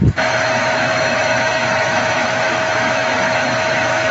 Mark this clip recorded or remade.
remade